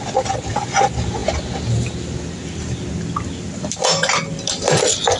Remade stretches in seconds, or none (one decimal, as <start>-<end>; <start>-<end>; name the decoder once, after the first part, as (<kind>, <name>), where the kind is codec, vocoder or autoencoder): none